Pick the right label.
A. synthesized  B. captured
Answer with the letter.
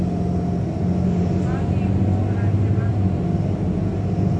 B